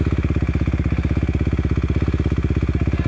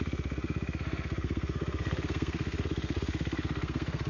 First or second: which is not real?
second